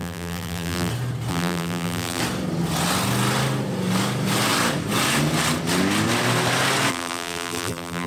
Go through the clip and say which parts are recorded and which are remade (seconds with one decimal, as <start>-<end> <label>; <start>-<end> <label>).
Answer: 0.0-0.9 remade; 0.9-1.3 recorded; 1.3-2.2 remade; 2.2-6.9 recorded; 6.9-8.1 remade